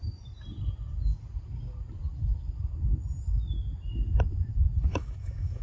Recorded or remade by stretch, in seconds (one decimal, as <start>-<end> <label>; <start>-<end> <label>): 0.0-4.9 recorded; 4.9-5.6 remade